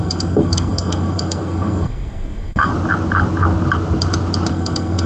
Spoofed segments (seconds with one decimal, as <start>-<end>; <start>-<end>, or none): 0.0-2.7; 4.5-5.1